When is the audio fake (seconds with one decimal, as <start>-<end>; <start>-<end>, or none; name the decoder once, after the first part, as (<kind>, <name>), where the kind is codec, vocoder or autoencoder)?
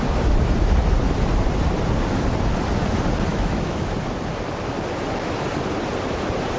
3.3-3.9 (autoencoder, DAC-VAE)